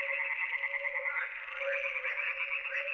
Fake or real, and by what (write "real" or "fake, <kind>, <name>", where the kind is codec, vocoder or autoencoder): real